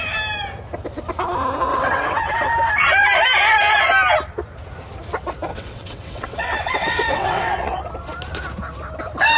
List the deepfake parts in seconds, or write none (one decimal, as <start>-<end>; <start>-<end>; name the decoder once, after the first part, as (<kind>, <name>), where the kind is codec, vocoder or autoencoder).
1.7-2.3 (vocoder, WaveNeXt); 5.5-7.9